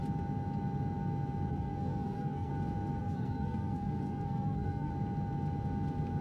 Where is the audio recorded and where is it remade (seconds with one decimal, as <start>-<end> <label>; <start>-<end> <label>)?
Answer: 0.0-1.5 recorded; 1.5-2.5 remade; 2.5-3.0 recorded; 3.0-4.9 remade; 4.9-6.2 recorded